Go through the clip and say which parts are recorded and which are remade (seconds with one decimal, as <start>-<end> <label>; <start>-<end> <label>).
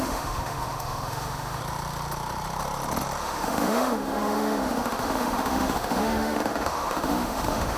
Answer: 0.0-1.6 remade; 1.6-3.2 recorded; 3.2-7.8 remade